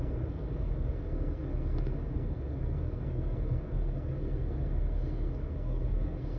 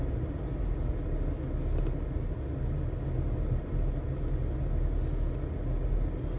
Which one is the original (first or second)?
second